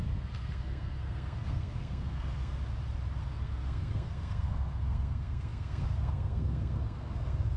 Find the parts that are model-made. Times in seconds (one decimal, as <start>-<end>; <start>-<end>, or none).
0.0-2.6; 3.2-7.6

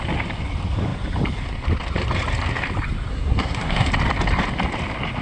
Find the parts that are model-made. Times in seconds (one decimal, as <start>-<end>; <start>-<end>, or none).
3.1-3.9